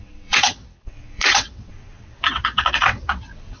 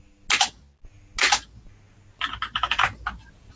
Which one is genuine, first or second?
second